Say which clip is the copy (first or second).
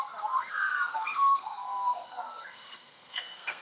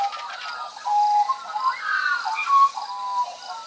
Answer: first